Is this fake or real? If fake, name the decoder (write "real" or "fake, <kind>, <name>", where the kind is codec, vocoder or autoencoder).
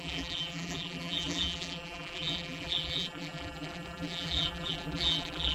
fake, vocoder, BigVGAN v2